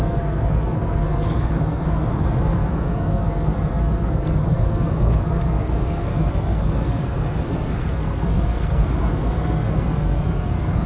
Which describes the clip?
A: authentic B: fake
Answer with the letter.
B